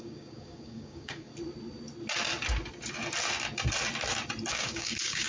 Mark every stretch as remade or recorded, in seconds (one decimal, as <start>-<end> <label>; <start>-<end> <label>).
0.0-1.3 remade; 1.3-4.5 recorded; 4.5-5.3 remade